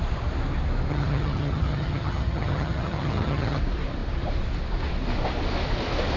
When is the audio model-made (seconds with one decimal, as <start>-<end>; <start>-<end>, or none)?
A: 0.9-3.6